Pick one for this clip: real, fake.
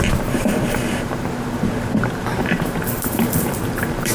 fake